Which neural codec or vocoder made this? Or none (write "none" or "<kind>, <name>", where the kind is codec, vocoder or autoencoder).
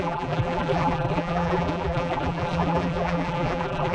vocoder, BigVGAN v2